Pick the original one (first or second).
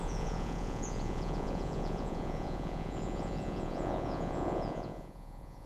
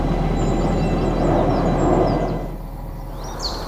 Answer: second